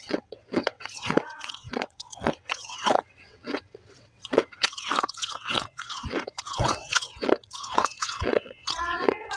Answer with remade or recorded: remade